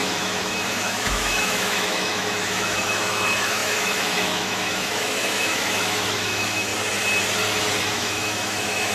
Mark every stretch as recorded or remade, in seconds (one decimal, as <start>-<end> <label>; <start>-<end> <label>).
0.0-6.7 remade; 6.7-7.9 recorded; 7.9-8.9 remade